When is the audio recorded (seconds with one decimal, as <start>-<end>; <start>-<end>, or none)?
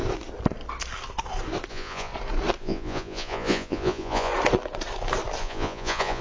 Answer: 0.0-1.7; 2.1-2.6; 4.3-5.4